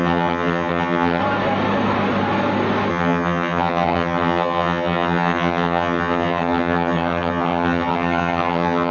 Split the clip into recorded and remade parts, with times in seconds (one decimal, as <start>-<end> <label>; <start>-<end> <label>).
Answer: 0.0-1.2 remade; 1.2-2.9 recorded; 2.9-8.9 remade